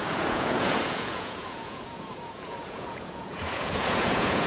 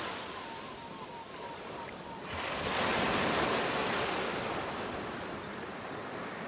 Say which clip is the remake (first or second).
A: first